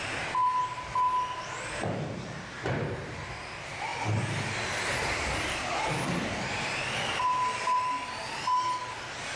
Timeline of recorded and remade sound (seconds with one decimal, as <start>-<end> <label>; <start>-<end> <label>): 0.0-9.4 recorded

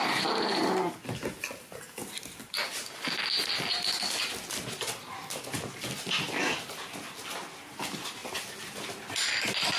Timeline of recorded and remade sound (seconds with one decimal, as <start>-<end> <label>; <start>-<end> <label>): 0.0-9.8 recorded

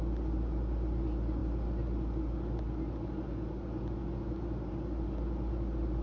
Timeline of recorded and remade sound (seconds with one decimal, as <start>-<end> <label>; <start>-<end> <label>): 0.0-6.0 recorded

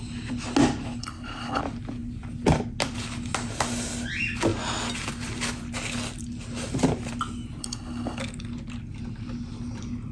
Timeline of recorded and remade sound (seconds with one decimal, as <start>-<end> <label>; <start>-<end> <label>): 0.0-1.0 recorded; 1.0-1.6 remade; 1.6-7.6 recorded; 7.6-8.2 remade; 8.2-10.1 recorded